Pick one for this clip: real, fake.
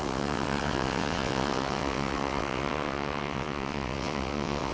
fake